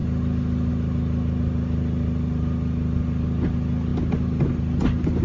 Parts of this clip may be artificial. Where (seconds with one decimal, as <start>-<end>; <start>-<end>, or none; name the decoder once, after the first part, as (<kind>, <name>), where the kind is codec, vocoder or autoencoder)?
none